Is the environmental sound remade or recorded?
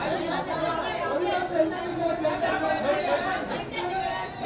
recorded